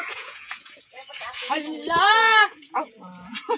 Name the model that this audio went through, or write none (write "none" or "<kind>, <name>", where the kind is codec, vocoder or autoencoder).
vocoder, Vocos